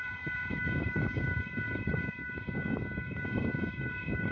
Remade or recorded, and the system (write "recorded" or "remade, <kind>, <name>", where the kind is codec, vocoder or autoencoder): remade, codec, DAC